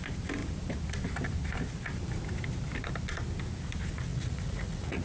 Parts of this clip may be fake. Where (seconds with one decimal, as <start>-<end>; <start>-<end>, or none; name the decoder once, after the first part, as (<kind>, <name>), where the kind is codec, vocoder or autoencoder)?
4.1-5.0 (vocoder, Vocos)